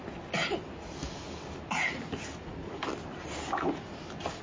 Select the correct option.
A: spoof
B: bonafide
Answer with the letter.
B